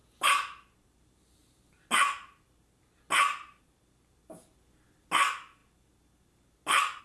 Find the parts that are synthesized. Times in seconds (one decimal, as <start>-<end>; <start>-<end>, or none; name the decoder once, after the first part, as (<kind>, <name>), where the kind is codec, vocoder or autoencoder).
none